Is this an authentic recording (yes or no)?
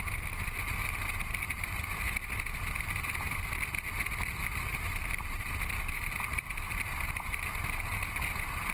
yes